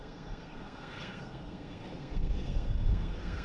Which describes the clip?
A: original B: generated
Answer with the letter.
B